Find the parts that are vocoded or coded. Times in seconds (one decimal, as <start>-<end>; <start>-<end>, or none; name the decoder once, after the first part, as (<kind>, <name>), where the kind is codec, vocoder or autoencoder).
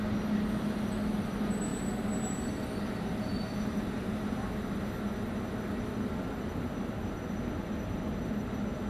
1.7-4.5 (vocoder, BigVGAN v2)